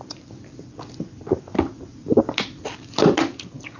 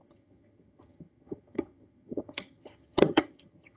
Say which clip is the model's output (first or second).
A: second